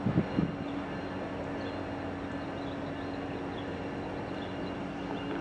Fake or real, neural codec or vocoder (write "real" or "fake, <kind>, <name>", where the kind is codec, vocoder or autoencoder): real